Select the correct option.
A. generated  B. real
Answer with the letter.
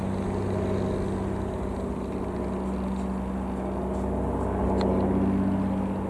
B